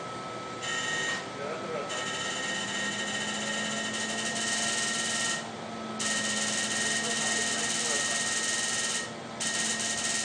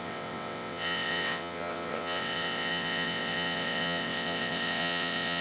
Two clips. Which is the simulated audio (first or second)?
second